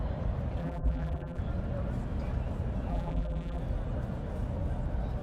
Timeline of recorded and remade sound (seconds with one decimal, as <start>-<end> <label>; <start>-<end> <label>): 0.0-0.6 recorded; 0.6-1.4 remade; 1.4-2.9 recorded; 2.9-3.6 remade; 3.6-5.2 recorded